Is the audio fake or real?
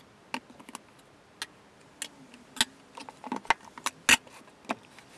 real